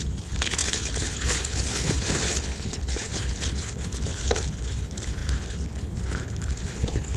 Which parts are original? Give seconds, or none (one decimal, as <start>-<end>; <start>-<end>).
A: none

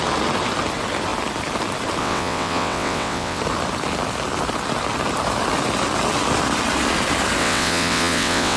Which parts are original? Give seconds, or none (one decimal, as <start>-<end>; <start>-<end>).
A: 0.0-2.0; 3.4-7.4

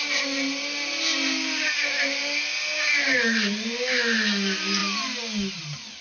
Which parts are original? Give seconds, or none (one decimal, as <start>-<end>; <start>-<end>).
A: 0.0-6.0

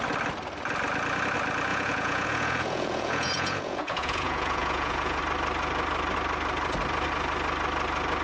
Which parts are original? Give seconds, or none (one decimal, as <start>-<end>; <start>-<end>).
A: 0.0-1.7; 5.2-8.2

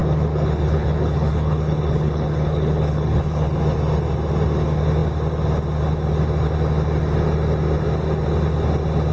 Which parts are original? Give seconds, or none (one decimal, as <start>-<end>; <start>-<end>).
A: 3.6-9.1

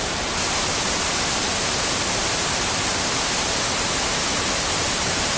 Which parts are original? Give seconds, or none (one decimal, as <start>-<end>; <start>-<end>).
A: 1.5-4.7